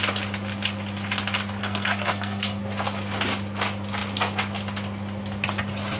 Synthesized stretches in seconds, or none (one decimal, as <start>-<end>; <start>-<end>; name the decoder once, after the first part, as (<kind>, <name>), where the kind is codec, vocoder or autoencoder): 1.6-2.6 (codec, SNAC)